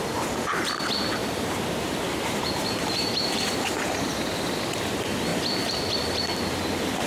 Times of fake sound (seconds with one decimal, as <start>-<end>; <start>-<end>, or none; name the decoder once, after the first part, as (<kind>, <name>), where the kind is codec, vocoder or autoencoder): 1.2-4.1 (vocoder, BigVGAN v2)